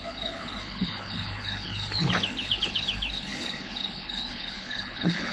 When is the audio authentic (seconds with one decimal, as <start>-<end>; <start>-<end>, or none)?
none

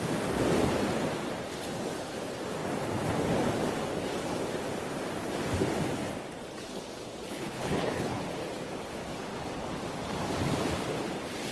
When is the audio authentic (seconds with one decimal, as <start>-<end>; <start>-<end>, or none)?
0.0-7.3; 8.2-11.5

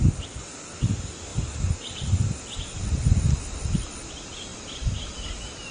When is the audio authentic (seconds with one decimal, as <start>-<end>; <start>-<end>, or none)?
0.0-5.7

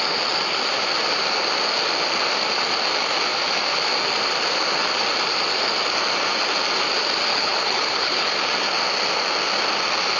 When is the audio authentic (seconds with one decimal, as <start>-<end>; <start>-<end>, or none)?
0.0-7.3; 8.4-10.2

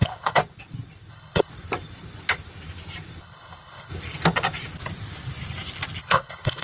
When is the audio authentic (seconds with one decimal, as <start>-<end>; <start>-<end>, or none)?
0.4-1.1; 1.5-3.2; 3.9-6.0

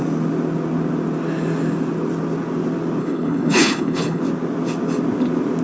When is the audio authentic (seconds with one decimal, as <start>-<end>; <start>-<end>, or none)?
0.0-3.0; 4.2-5.6

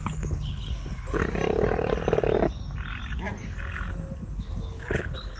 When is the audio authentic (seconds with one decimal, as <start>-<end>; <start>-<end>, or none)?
1.2-4.4